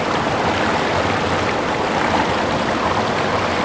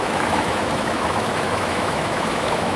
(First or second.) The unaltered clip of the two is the first